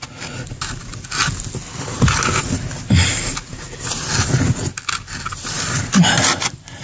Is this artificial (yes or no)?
no